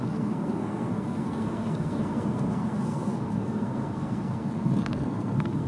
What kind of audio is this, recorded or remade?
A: remade